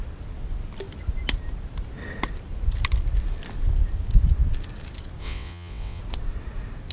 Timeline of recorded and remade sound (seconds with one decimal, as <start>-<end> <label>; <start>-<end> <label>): 0.0-5.2 recorded; 5.2-6.0 remade; 6.0-6.9 recorded